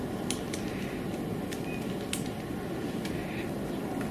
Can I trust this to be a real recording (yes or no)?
yes